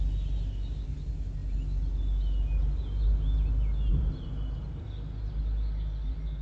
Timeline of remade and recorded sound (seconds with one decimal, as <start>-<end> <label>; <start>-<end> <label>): 0.0-6.4 recorded